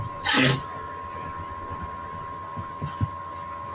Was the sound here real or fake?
real